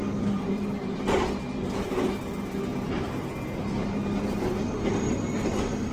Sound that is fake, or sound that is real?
real